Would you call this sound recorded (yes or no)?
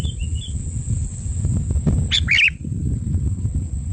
yes